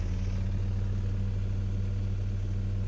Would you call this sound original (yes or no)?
yes